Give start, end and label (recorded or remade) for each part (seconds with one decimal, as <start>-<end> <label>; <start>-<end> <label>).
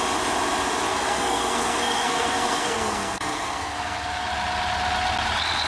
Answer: 0.0-0.9 recorded; 0.9-4.3 remade; 4.3-5.7 recorded